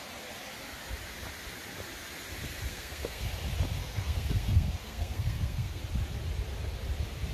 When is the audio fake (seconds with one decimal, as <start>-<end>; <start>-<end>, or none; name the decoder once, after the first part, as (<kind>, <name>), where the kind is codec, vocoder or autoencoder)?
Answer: 2.7-3.3 (codec, SNAC); 3.8-5.8